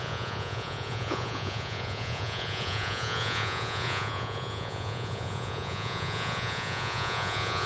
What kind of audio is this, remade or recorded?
remade